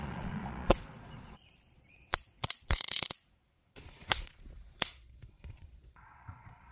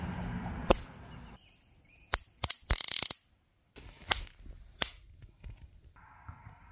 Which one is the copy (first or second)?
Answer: first